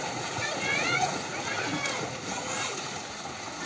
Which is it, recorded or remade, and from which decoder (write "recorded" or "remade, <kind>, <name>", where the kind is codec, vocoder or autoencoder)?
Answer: remade, vocoder, Vocos